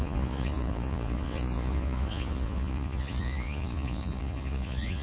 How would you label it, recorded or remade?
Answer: remade